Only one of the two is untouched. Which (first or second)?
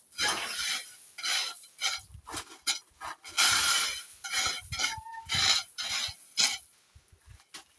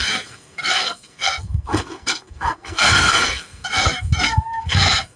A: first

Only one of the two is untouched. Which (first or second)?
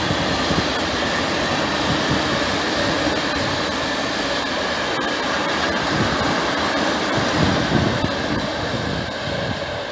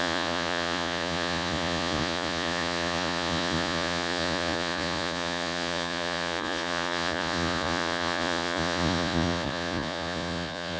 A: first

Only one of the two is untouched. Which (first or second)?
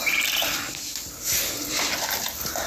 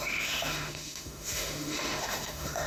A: first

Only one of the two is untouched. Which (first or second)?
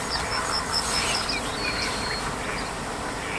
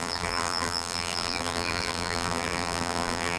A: first